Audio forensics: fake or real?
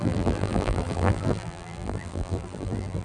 fake